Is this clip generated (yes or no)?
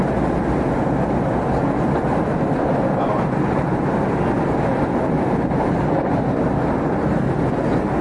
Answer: no